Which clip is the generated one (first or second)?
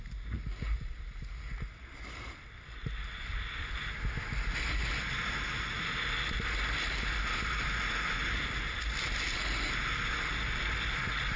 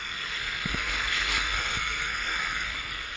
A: second